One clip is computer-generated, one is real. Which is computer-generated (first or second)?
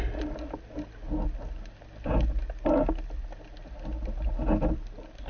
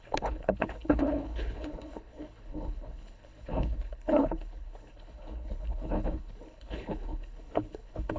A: second